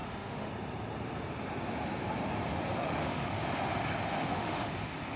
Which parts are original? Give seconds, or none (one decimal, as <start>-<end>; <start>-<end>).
0.5-2.8; 3.4-4.2; 4.7-5.2